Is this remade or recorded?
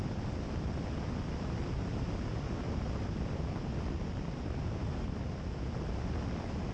recorded